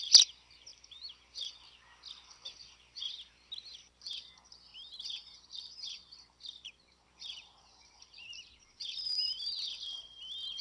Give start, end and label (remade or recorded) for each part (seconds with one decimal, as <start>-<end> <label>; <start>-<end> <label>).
0.0-0.7 recorded; 0.7-1.5 remade; 1.5-4.7 recorded; 4.7-9.5 remade; 9.5-10.6 recorded